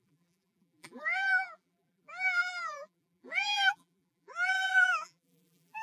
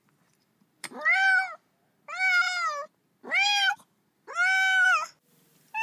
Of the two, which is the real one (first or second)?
second